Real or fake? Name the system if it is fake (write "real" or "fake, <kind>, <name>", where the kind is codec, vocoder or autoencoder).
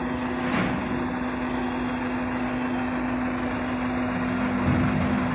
real